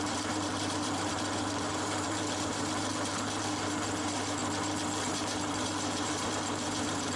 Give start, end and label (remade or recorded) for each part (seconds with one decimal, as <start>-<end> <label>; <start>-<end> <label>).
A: 0.0-4.4 remade; 4.4-5.1 recorded; 5.1-7.2 remade

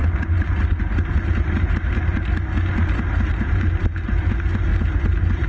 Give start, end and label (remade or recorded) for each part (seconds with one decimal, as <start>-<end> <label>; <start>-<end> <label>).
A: 0.0-5.5 recorded

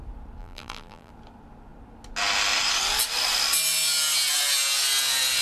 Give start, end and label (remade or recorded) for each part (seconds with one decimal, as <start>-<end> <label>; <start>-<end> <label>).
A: 0.0-0.4 recorded; 0.4-1.1 remade; 1.1-5.4 recorded

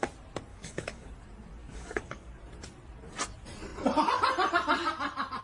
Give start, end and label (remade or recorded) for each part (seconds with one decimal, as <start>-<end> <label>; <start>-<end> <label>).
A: 0.0-0.5 recorded; 0.5-1.1 remade; 1.1-1.6 recorded; 1.6-2.3 remade; 2.3-5.4 recorded

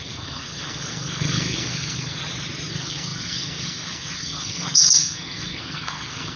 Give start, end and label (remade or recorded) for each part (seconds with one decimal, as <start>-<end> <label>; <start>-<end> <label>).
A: 0.0-2.2 remade; 2.2-2.7 recorded; 2.7-6.4 remade

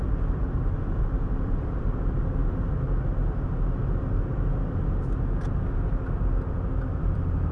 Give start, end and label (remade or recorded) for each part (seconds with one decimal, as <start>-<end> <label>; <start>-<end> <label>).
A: 0.0-2.4 remade; 2.4-6.9 recorded; 6.9-7.5 remade

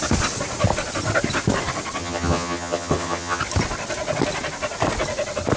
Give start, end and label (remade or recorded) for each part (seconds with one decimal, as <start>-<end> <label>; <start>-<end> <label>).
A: 0.0-2.0 recorded; 2.0-3.4 remade; 3.4-5.6 recorded

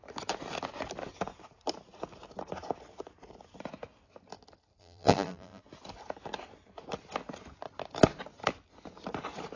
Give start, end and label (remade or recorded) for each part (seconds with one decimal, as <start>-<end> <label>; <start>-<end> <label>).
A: 0.0-4.8 recorded; 4.8-5.6 remade; 5.6-9.6 recorded